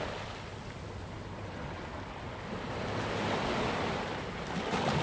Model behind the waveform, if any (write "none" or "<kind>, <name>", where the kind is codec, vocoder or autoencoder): none